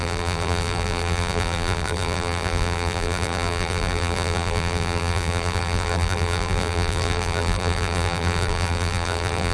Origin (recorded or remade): remade